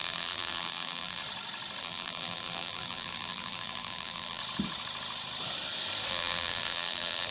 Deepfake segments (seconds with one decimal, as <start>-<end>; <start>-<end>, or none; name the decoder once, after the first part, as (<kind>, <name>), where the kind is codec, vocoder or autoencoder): 0.0-1.2 (vocoder, BigVGAN v2); 1.8-4.4; 6.1-7.3